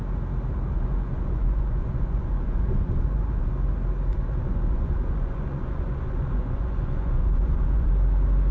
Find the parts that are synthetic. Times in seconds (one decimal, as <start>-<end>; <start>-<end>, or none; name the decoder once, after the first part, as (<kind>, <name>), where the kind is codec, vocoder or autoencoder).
0.7-3.5 (vocoder, Vocos); 4.1-7.9